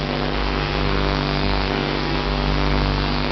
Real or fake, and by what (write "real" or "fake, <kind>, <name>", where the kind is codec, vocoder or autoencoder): fake, codec, SNAC